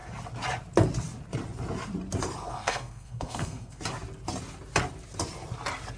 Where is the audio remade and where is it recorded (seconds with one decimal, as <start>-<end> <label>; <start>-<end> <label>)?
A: 0.0-2.4 recorded; 2.4-3.8 remade; 3.8-6.0 recorded